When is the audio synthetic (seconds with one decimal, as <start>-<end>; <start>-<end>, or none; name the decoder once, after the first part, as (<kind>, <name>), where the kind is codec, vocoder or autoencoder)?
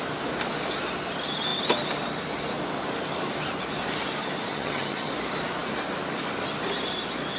4.5-5.1 (vocoder, HiFi-GAN)